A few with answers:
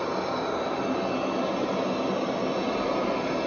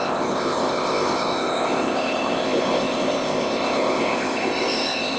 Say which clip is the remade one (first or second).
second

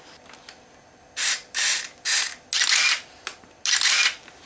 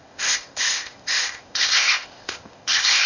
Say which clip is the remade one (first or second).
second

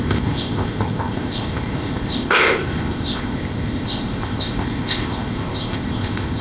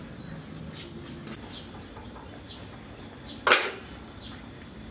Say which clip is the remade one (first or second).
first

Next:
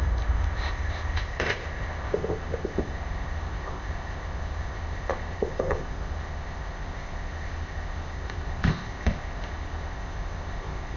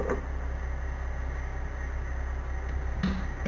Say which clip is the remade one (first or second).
first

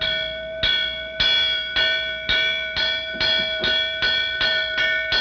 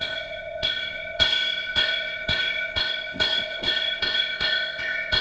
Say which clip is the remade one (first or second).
second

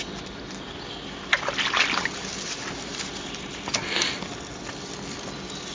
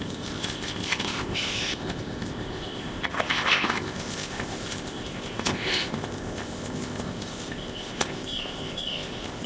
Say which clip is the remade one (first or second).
second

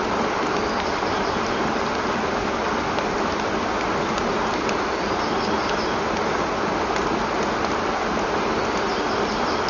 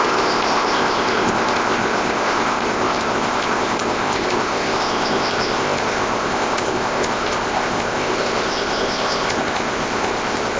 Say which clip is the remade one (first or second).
second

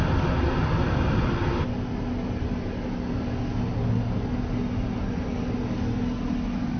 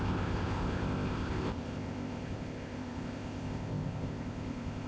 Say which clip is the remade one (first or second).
second